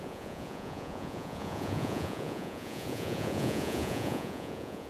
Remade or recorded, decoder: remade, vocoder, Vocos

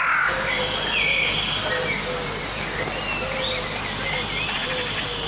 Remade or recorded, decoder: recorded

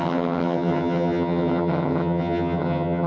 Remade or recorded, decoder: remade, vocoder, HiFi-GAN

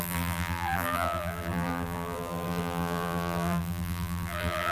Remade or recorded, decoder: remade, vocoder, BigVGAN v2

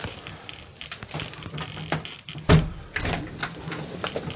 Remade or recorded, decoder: remade, vocoder, BigVGAN v2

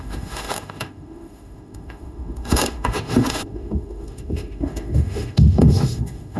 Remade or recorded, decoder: remade, autoencoder, DAC-VAE